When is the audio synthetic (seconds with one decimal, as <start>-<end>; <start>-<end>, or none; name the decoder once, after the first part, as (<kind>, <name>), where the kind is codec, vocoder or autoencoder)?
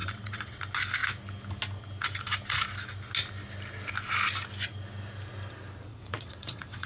0.0-0.6 (vocoder, WaveNeXt); 5.9-6.9